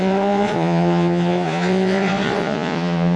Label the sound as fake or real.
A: fake